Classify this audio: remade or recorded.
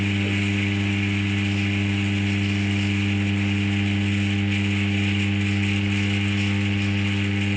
recorded